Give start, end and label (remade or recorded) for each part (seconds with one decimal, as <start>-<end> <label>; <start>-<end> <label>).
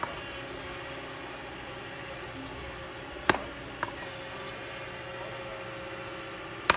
0.0-6.8 recorded